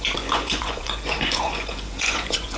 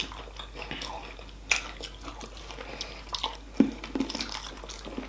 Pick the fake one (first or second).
first